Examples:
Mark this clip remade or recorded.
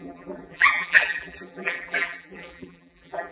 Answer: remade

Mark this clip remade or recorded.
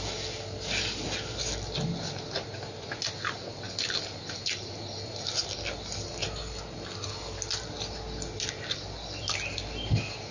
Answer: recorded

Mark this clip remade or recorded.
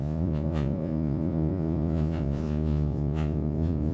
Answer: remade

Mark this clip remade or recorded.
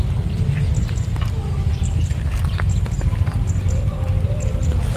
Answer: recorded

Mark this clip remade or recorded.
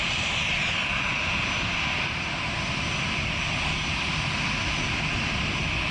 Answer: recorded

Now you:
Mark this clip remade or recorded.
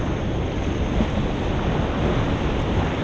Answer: recorded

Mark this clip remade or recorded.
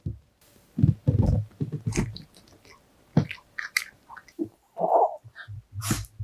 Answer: recorded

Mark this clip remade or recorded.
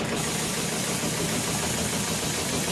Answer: recorded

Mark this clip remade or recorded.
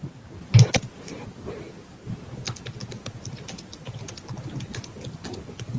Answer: recorded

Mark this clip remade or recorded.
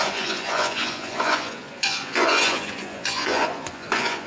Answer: remade